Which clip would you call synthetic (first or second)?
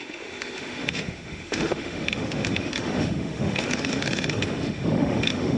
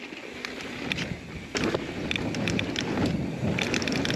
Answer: first